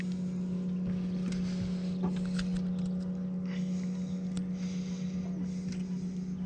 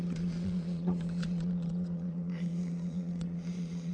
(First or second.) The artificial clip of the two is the second